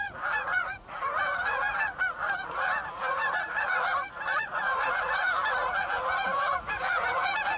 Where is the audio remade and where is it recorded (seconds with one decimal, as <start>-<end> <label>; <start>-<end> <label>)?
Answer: 0.0-7.6 remade